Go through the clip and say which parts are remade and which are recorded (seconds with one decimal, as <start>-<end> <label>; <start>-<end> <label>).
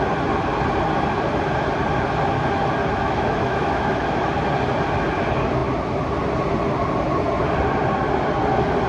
0.0-3.0 recorded; 3.0-4.3 remade; 4.3-8.9 recorded